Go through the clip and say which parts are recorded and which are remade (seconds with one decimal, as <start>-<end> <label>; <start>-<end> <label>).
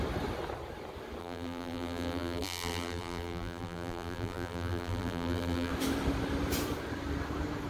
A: 0.0-1.2 recorded; 1.2-5.7 remade; 5.7-7.7 recorded